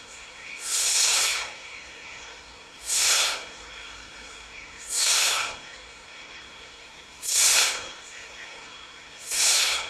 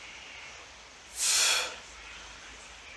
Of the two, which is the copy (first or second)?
first